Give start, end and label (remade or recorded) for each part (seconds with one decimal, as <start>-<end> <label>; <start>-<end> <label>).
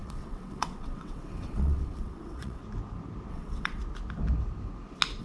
0.0-2.6 remade; 2.6-3.3 recorded; 3.3-3.8 remade; 3.8-5.2 recorded